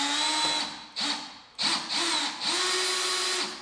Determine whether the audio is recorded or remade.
recorded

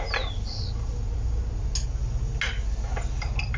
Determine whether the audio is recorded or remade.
recorded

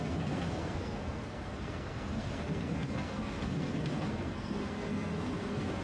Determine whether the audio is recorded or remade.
remade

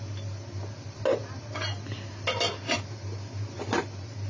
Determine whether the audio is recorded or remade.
recorded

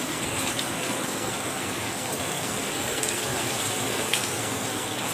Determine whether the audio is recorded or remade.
remade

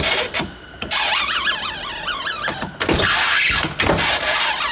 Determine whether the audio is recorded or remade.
recorded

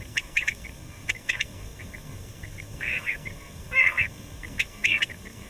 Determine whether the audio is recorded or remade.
remade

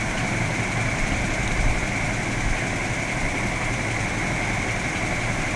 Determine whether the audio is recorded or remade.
recorded